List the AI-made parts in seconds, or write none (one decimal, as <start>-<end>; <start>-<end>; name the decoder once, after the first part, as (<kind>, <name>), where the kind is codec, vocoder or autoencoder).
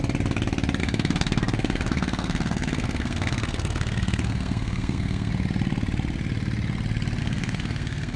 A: 0.8-5.3 (codec, SNAC); 7.2-8.2